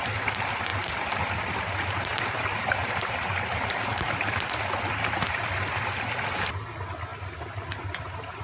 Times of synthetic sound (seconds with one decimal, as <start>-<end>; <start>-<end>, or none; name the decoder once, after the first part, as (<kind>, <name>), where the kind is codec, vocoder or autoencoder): none